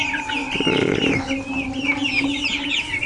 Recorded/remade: recorded